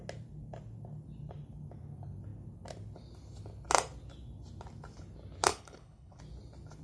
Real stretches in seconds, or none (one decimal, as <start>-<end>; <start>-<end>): 0.0-5.5; 6.2-6.8